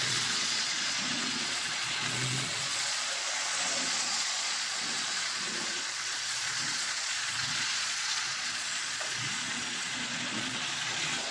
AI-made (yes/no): yes